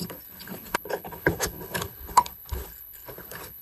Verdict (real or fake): fake